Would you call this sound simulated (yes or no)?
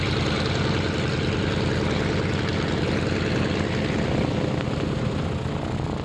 no